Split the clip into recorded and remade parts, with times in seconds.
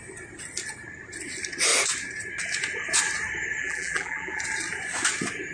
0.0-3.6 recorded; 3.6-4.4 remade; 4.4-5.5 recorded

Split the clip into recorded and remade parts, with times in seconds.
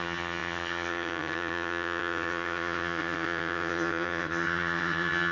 0.0-5.3 remade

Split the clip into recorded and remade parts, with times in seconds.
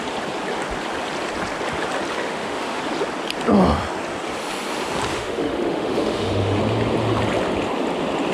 0.0-2.2 recorded; 2.2-2.8 remade; 2.8-5.1 recorded; 5.1-6.6 remade; 6.6-8.3 recorded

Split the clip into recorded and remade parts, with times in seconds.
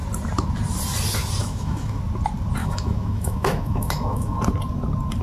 0.0-1.4 recorded; 1.4-2.0 remade; 2.0-2.6 recorded; 2.6-4.4 remade; 4.4-5.2 recorded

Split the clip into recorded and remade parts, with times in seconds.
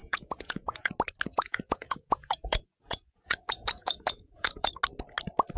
0.0-0.9 remade; 0.9-1.3 recorded; 1.3-4.7 remade; 4.7-5.6 recorded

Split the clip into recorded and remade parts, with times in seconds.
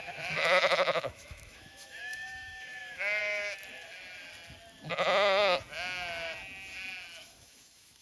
0.0-3.2 remade; 3.2-7.2 recorded; 7.2-8.0 remade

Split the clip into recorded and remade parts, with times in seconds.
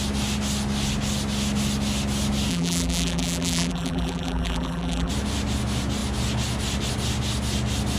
0.0-2.5 recorded; 2.5-5.1 remade; 5.1-8.0 recorded